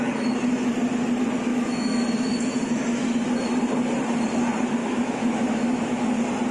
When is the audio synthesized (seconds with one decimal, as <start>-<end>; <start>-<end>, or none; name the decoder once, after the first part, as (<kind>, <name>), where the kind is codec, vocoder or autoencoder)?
1.5-2.0 (autoencoder, DAC-VAE); 4.8-6.1